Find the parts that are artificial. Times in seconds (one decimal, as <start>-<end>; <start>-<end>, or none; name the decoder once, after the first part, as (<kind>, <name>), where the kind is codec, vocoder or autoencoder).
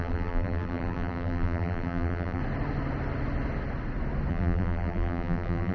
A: 0.0-2.4 (vocoder, BigVGAN v2); 4.3-5.7